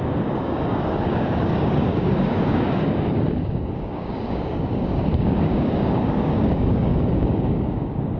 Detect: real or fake fake